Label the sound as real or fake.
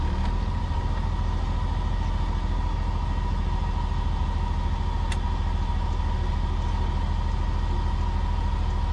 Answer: real